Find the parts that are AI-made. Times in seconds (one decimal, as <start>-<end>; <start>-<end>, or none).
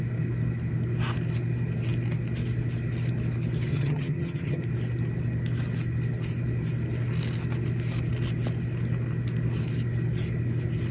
3.7-4.6